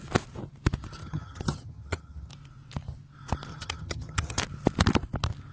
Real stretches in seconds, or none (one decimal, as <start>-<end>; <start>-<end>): 0.0-1.0; 2.3-3.5; 4.4-5.5